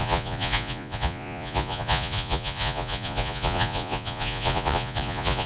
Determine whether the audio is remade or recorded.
remade